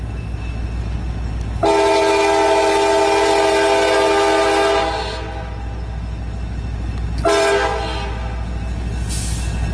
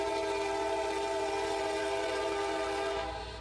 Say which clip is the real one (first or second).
first